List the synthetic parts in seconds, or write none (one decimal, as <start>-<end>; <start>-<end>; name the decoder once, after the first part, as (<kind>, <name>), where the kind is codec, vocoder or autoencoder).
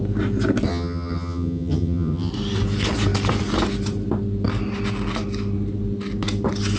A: 0.7-2.3 (vocoder, HiFi-GAN)